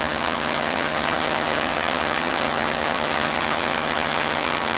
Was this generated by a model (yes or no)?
yes